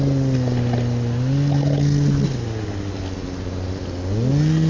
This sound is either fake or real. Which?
real